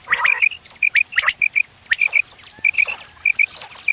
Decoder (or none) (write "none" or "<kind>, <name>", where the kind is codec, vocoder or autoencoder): none